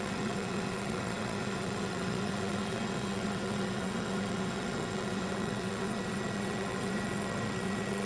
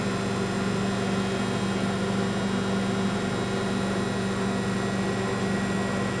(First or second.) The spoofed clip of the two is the first